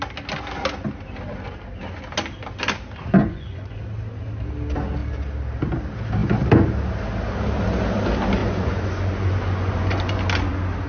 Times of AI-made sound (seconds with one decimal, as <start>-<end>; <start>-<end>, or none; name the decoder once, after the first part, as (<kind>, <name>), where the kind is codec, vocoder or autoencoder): 3.1-3.8 (vocoder, Vocos); 8.4-10.2

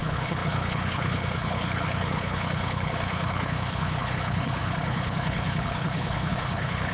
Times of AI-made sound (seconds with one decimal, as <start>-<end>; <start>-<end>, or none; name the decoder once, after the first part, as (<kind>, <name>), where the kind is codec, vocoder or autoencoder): 0.0-6.9 (codec, HILCodec)

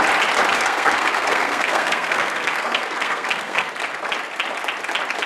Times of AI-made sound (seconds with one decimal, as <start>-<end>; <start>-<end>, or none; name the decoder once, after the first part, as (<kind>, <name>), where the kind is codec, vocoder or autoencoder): 0.5-3.7 (codec, SNAC)

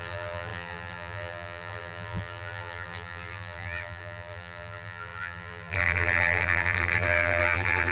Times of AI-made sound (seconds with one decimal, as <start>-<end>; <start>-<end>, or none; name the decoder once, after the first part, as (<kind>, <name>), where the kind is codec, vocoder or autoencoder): 0.0-7.9 (vocoder, BigVGAN v2)

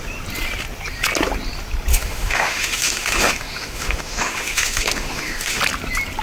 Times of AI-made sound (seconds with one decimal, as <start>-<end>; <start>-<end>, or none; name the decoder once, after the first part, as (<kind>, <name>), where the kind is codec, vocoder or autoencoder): 1.9-5.6 (autoencoder, DAC-VAE)

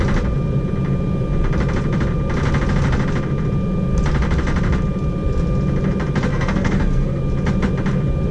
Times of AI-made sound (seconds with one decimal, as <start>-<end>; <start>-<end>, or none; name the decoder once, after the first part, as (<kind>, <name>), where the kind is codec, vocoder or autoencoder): 6.3-7.2 (codec, SNAC)

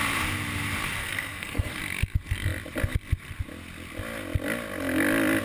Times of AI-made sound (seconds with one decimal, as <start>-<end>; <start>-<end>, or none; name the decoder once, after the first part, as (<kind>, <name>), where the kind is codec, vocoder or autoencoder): 1.0-1.8 (codec, SNAC)